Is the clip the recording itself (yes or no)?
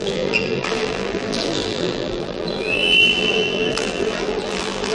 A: no